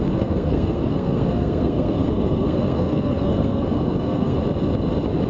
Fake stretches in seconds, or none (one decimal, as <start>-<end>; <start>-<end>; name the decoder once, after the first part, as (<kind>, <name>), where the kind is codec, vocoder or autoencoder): 0.0-4.4 (codec, SNAC)